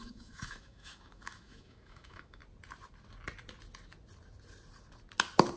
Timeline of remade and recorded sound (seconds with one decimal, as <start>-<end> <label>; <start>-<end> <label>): 0.0-2.4 remade; 2.4-5.6 recorded